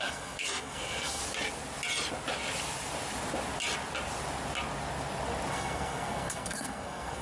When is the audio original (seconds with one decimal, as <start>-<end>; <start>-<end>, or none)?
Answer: 1.2-5.5

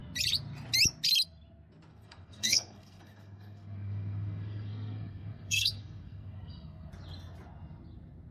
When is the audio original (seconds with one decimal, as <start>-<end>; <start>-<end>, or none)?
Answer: 0.0-1.9; 6.9-8.3

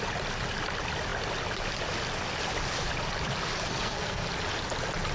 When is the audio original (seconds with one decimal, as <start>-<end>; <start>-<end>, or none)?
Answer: 0.0-3.7; 4.3-5.1